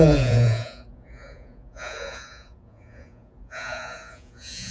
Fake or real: fake